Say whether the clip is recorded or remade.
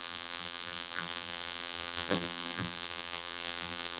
remade